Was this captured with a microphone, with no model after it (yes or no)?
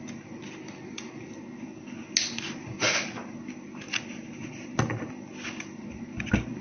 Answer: yes